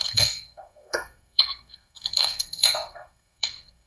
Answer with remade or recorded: remade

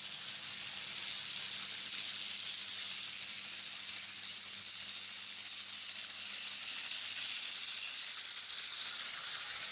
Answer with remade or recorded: recorded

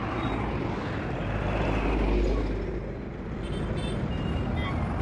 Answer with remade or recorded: recorded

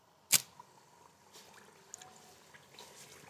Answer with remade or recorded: recorded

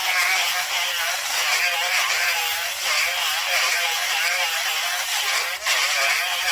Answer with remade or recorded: remade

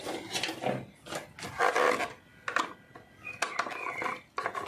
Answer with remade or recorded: recorded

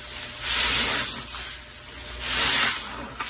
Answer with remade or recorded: recorded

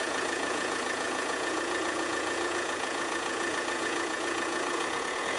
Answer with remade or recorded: remade